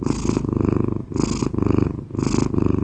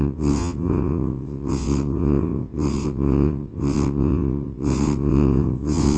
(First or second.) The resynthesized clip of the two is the second